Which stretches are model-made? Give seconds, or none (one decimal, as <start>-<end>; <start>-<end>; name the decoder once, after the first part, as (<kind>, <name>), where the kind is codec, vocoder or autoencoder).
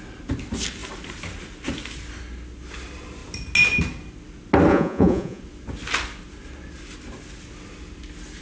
4.7-5.4 (vocoder, Vocos)